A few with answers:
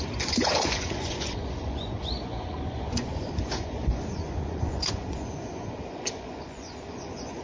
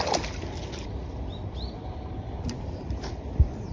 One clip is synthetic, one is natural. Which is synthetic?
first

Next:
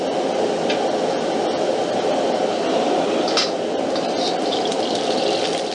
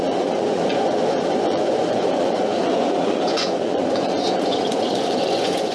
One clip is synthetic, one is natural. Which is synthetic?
second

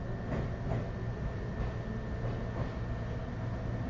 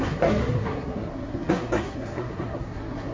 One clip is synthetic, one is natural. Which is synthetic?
second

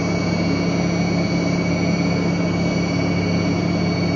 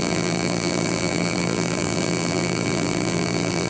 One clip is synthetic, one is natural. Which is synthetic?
second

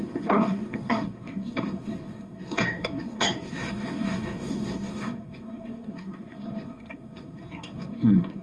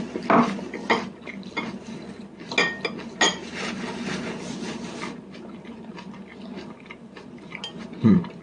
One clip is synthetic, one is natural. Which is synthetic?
first